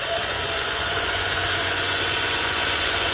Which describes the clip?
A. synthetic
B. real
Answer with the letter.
A